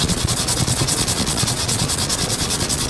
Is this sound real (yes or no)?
no